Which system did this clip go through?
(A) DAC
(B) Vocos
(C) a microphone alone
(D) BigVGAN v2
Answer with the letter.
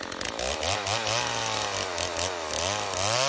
C